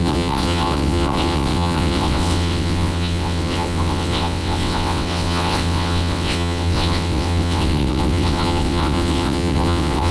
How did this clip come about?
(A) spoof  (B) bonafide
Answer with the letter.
A